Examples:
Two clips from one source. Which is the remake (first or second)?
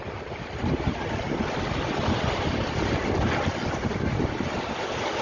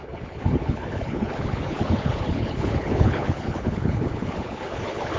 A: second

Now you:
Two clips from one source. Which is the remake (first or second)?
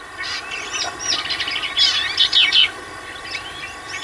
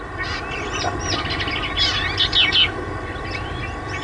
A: first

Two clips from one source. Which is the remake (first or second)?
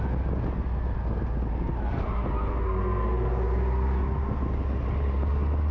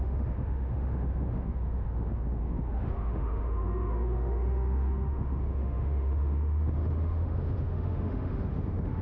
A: second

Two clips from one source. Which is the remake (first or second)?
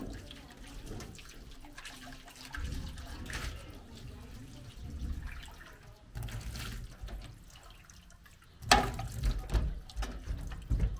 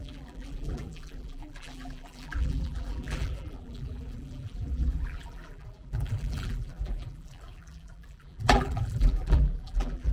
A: second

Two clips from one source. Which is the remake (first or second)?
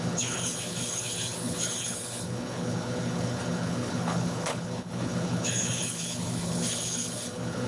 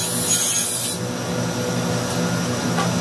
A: first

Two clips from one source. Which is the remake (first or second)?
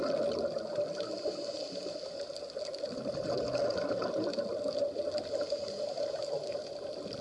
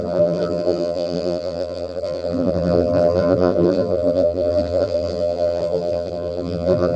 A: second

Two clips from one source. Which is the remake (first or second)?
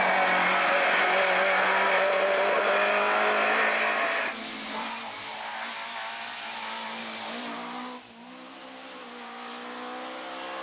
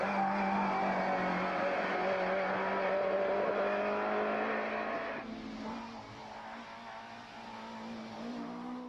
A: first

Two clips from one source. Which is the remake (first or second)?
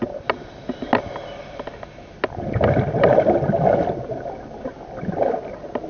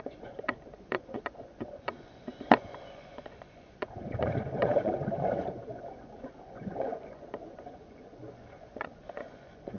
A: second